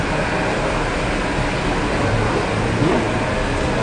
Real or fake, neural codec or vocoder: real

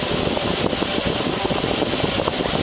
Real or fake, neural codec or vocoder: fake, vocoder, BigVGAN v2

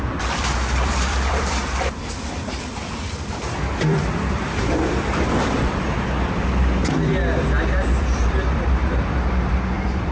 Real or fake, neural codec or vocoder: fake, vocoder, BigVGAN v2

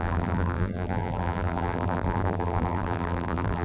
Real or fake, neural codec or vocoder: fake, vocoder, BigVGAN v2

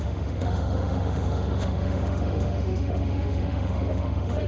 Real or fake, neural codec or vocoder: fake, autoencoder, DAC-VAE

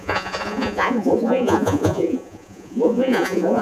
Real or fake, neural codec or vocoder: fake, vocoder, Vocos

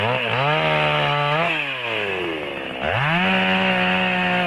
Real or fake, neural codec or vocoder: real